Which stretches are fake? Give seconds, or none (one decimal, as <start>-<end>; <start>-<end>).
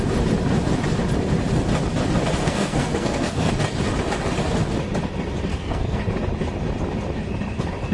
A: 2.4-3.5; 5.5-6.0